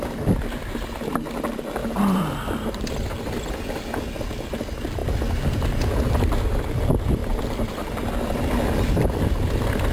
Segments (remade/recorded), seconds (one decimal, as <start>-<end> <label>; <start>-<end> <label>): 0.0-1.8 recorded; 1.8-2.8 remade; 2.8-9.9 recorded